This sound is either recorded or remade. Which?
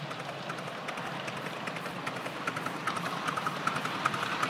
recorded